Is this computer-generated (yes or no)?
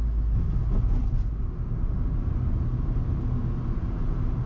no